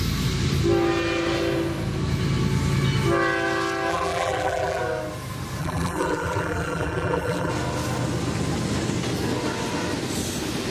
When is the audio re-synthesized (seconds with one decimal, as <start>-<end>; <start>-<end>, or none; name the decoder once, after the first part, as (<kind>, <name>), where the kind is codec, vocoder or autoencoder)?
3.9-4.8 (vocoder, BigVGAN v2); 5.6-7.5